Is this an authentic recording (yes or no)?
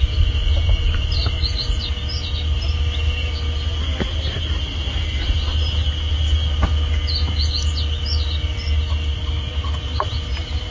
yes